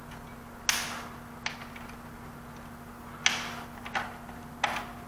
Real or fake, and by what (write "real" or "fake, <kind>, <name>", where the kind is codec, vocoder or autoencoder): real